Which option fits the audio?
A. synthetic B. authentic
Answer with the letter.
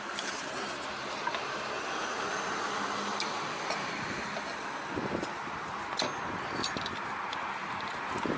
B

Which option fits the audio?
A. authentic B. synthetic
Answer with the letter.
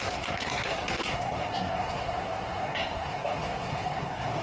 B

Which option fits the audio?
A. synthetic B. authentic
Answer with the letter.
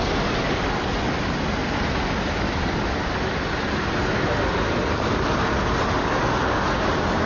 B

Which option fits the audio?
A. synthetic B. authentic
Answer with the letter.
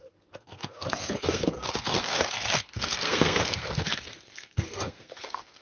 A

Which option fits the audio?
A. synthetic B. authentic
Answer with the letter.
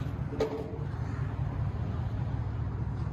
B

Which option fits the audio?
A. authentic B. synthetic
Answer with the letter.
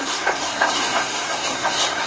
B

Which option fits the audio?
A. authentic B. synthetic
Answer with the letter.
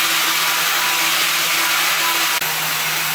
A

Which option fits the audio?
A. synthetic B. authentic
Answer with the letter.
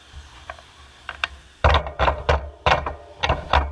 B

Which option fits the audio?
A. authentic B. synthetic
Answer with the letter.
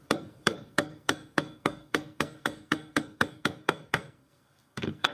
B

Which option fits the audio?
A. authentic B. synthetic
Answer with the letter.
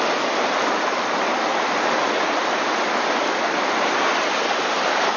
A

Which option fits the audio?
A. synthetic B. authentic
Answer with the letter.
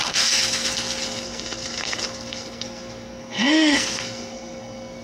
A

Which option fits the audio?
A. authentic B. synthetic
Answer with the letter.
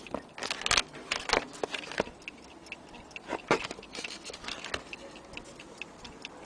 A